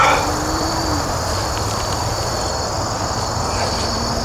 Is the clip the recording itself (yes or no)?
no